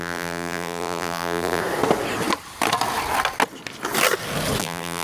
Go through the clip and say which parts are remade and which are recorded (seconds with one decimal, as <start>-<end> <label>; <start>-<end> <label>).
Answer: 0.0-1.6 remade; 1.6-4.6 recorded; 4.6-5.0 remade